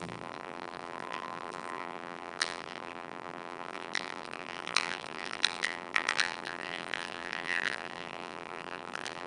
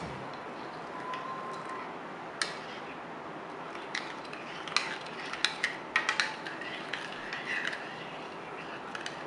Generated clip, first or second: first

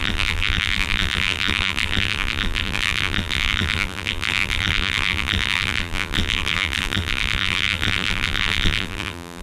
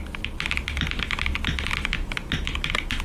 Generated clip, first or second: first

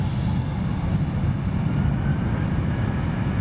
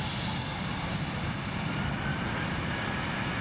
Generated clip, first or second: second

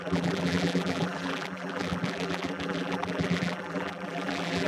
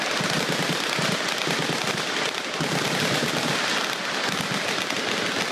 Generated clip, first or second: first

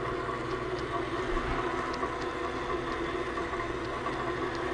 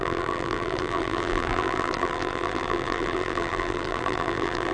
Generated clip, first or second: second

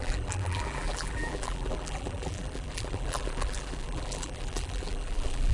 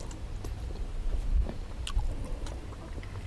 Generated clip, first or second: first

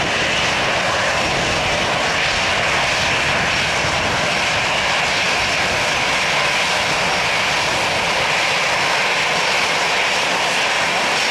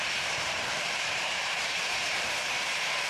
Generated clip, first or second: second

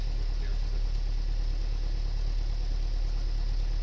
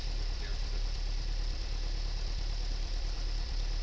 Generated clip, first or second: second